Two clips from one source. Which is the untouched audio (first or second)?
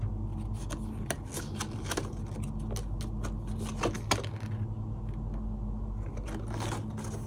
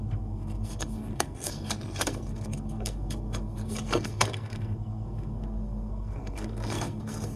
first